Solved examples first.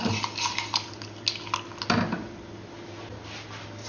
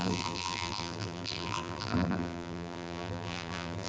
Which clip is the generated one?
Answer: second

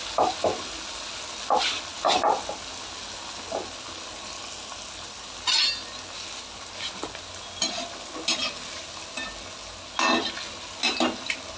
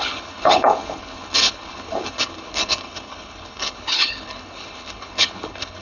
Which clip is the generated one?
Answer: second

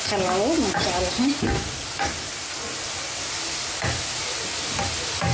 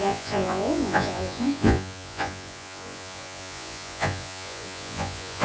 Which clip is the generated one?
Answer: second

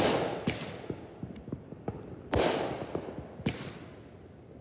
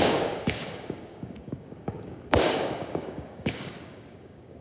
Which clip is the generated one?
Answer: second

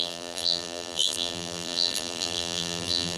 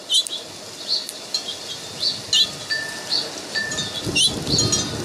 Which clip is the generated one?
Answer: first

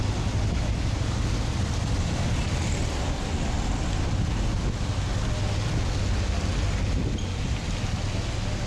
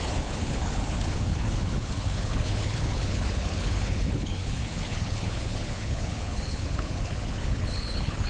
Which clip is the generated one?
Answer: second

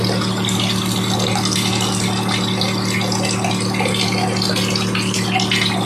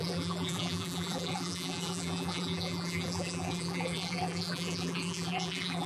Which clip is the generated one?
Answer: second